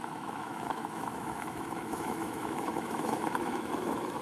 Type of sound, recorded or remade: remade